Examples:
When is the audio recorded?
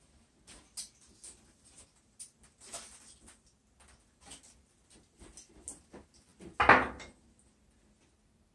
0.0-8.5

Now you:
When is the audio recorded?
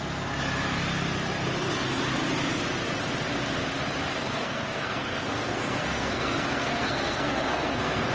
0.0-4.1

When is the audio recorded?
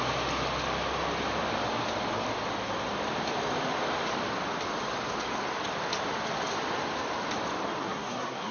0.0-7.8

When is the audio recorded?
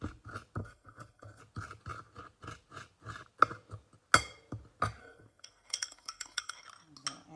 0.0-0.6; 1.4-5.0; 6.6-7.4